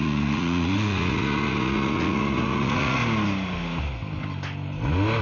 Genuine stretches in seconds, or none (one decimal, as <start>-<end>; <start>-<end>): 3.0-5.2